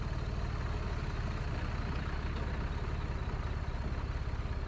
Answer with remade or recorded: recorded